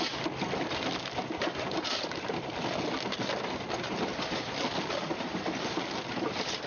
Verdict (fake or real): real